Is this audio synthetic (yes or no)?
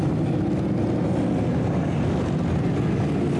no